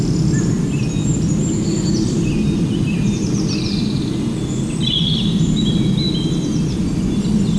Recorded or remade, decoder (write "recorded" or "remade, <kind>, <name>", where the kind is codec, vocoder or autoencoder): recorded